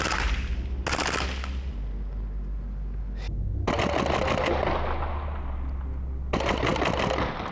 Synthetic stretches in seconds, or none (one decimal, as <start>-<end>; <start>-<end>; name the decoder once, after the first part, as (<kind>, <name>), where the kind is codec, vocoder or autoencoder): none